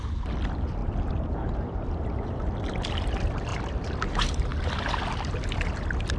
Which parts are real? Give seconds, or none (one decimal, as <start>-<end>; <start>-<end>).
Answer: 0.0-0.8; 3.1-3.5; 4.0-4.5